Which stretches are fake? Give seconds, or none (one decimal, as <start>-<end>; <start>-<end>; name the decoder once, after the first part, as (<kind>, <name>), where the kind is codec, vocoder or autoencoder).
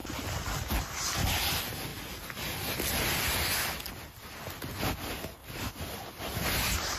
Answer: 5.4-6.2 (vocoder, BigVGAN v2)